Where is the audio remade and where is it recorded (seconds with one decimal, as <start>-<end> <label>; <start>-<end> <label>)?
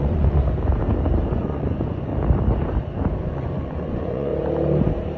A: 0.0-0.4 remade; 0.4-1.3 recorded; 1.3-2.1 remade; 2.1-3.2 recorded; 3.2-4.3 remade; 4.3-5.2 recorded